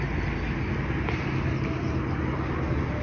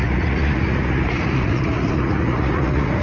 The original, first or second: first